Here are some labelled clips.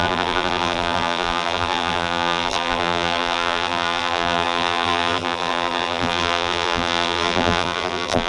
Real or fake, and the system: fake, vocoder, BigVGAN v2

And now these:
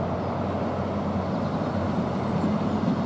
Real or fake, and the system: real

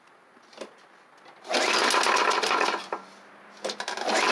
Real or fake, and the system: real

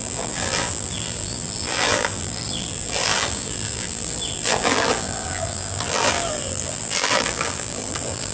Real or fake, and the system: fake, vocoder, BigVGAN v2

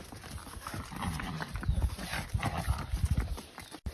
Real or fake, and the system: fake, vocoder, BigVGAN v2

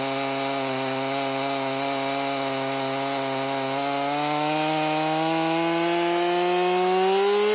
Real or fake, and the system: real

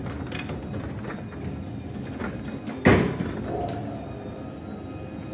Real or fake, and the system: real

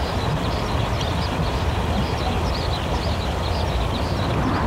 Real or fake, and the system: real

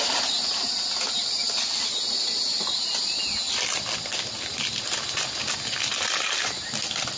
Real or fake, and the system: real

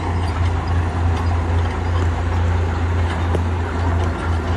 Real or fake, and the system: real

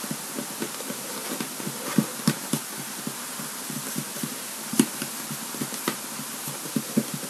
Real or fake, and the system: real